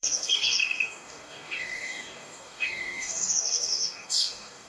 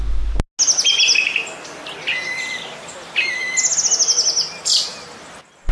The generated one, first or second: first